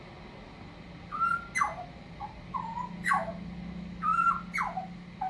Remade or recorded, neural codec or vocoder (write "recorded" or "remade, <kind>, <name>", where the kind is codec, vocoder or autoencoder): recorded